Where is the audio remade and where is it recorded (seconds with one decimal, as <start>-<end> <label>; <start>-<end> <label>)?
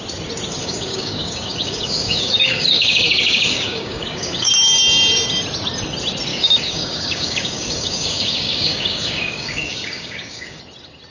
0.0-0.6 recorded; 0.6-4.5 remade; 4.5-6.3 recorded; 6.3-10.6 remade; 10.6-11.1 recorded